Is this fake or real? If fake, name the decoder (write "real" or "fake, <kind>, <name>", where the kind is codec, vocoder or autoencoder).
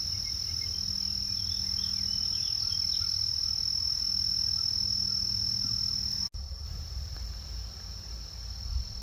real